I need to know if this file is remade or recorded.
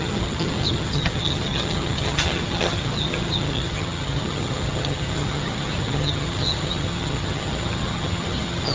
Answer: remade